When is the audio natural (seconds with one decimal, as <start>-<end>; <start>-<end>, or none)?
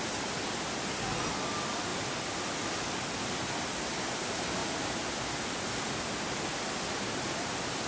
0.0-7.9